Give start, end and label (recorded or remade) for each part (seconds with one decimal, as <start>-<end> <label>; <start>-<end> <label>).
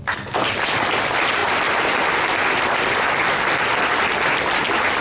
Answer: 0.0-5.0 recorded